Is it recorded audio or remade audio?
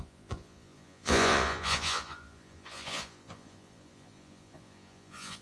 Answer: remade